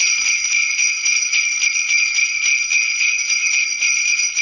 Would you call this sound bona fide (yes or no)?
yes